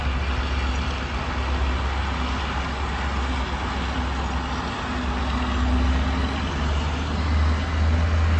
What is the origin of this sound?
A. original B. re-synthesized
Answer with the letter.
A